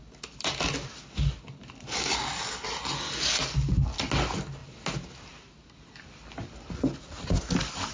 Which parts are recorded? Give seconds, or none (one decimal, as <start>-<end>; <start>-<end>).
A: 0.0-7.9